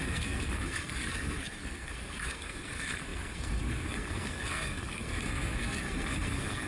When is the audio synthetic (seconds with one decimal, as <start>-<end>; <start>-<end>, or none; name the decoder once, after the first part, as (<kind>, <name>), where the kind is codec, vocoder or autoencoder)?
0.0-6.7 (codec, SNAC)